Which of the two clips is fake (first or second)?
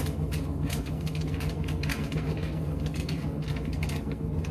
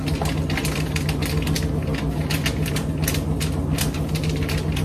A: first